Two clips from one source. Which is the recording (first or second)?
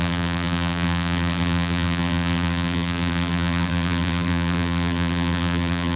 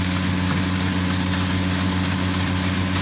second